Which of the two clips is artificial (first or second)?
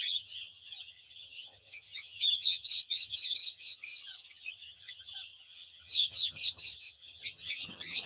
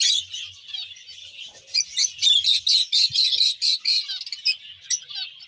first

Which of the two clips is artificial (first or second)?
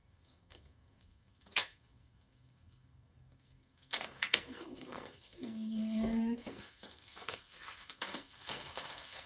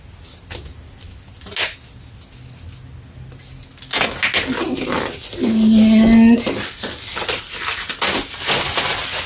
first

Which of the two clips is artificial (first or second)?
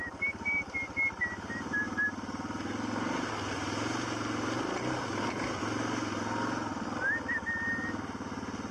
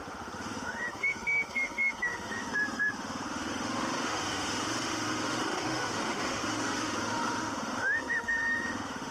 second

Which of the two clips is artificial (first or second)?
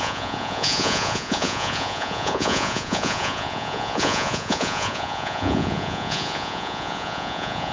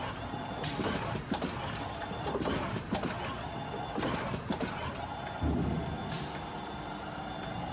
first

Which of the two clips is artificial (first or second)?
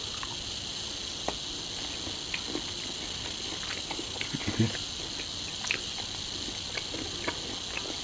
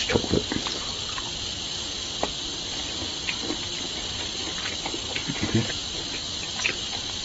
second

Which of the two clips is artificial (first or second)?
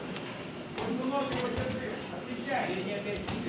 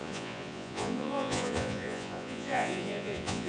second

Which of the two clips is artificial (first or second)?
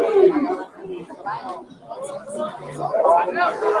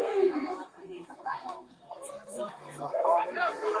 second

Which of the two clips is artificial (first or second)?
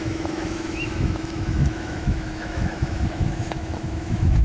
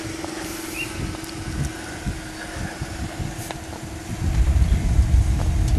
first